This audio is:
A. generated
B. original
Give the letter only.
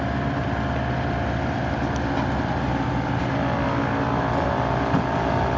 B